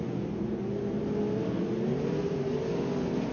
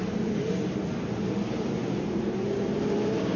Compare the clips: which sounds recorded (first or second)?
first